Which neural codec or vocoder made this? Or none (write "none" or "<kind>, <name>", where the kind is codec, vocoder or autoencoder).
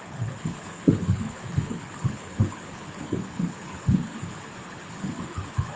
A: codec, HILCodec